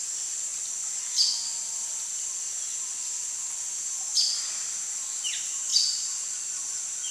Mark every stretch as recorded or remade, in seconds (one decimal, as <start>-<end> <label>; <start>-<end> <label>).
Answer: 0.0-7.1 recorded